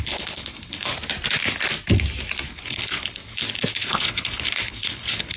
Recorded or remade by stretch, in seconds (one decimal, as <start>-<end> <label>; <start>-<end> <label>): 0.0-0.9 remade; 0.9-2.5 recorded; 2.5-5.4 remade